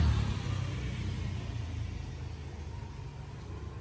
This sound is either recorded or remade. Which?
recorded